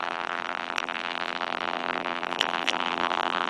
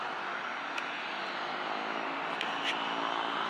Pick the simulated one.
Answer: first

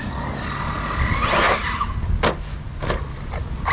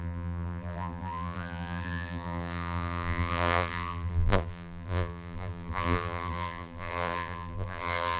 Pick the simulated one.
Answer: second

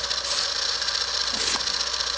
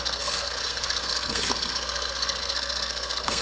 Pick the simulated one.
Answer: second